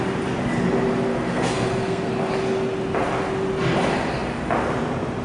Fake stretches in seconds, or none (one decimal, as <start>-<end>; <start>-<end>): 1.1-2.1